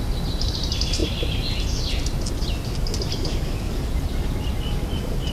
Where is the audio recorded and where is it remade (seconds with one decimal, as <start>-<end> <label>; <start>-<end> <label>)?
0.0-3.1 recorded; 3.1-3.9 remade; 3.9-5.3 recorded